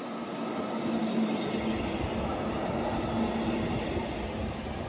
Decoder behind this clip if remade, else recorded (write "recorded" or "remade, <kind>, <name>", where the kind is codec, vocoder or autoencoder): recorded